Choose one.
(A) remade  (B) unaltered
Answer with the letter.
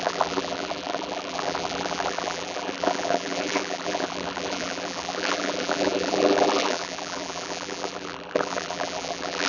A